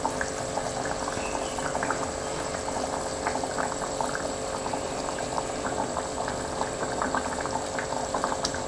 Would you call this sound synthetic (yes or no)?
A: no